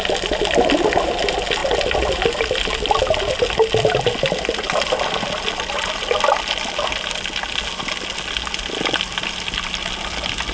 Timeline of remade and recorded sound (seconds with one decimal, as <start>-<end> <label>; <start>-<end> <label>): 0.0-10.5 recorded